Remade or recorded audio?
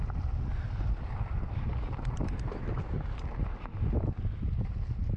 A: recorded